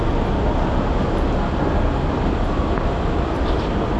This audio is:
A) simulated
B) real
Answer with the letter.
B